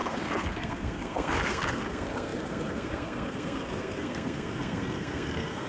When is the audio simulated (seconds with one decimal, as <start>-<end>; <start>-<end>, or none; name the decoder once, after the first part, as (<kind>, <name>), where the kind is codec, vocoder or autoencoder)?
0.0-5.7 (codec, SNAC)